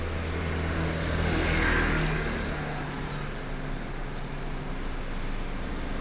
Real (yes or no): yes